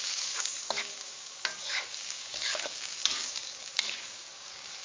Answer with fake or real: fake